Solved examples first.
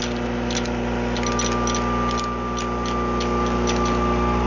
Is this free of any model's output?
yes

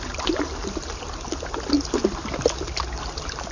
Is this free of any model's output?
yes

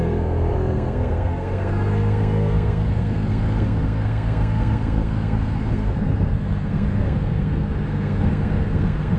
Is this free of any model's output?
no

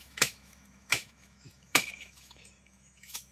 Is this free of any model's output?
no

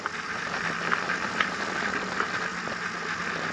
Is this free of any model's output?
yes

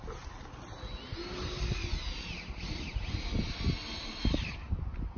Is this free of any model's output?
yes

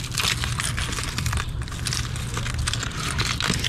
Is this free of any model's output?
yes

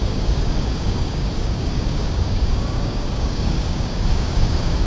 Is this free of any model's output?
no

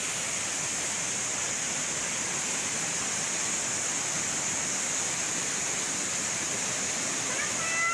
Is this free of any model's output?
yes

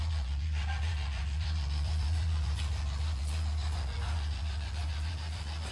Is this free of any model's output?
no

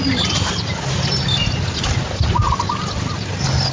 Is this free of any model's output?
yes